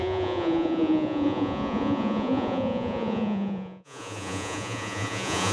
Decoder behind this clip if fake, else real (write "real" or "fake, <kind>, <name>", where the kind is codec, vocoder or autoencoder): fake, vocoder, Vocos